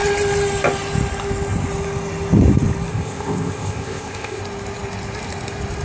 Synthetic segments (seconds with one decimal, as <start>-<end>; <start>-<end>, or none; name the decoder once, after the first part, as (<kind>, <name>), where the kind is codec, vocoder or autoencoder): 2.9-4.4 (codec, ZipCodec)

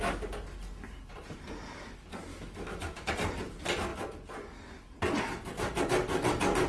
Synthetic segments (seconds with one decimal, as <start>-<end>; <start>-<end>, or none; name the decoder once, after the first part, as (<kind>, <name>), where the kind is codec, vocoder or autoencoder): 2.3-3.1 (autoencoder, DAC-VAE)

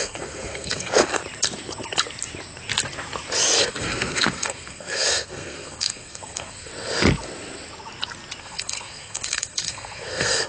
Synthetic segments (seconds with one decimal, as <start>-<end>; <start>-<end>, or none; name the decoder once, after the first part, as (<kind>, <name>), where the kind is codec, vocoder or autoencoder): 0.0-1.1 (codec, SNAC); 3.6-6.7; 8.4-10.5

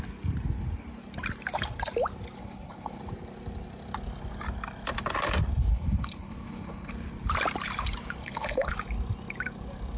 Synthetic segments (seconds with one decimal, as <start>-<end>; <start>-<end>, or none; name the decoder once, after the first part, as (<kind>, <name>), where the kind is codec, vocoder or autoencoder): 2.4-3.0 (codec, HILCodec); 5.7-6.9; 8.2-8.7

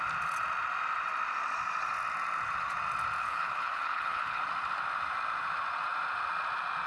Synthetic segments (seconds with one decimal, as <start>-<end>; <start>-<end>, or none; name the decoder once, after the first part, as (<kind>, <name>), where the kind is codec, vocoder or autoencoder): 3.2-4.4 (codec, HILCodec)

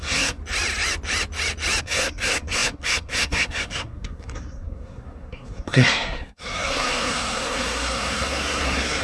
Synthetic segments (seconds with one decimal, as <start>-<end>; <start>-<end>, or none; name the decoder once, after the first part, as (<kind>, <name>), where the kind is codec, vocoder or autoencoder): 0.0-0.4 (codec, SNAC); 1.8-9.0